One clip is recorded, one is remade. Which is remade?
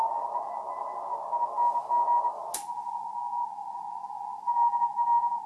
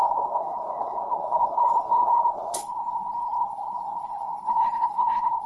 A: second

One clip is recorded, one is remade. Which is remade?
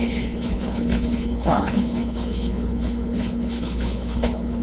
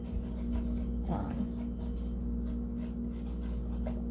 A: first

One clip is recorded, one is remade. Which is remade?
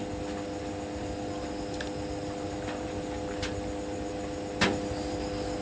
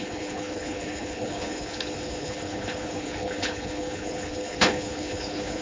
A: second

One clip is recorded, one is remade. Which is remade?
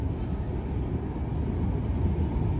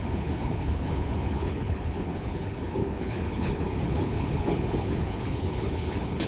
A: second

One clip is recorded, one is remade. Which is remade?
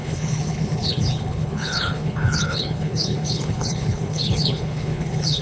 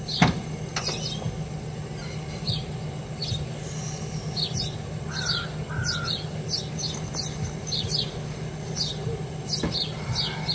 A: first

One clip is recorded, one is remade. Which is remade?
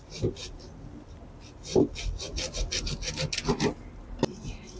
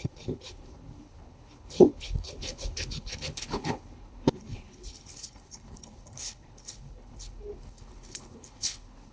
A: second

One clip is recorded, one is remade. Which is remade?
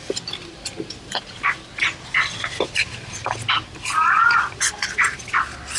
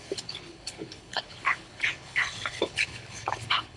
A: second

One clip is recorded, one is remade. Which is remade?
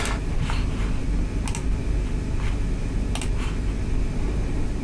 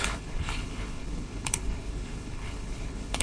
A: second